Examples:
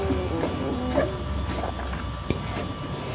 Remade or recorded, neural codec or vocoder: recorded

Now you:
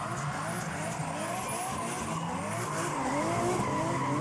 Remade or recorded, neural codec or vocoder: recorded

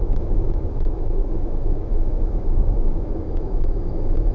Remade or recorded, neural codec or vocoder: remade, autoencoder, DAC-VAE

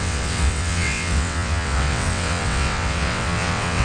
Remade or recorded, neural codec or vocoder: remade, vocoder, WaveNeXt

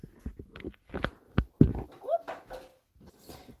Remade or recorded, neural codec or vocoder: recorded